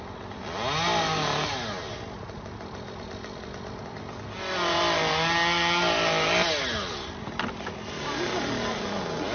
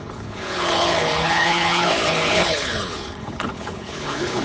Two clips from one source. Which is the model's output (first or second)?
second